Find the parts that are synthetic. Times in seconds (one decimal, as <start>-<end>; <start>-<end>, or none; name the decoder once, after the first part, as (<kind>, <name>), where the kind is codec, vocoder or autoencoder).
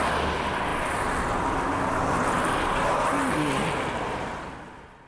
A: none